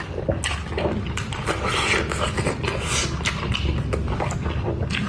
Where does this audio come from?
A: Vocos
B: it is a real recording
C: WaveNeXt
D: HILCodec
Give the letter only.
B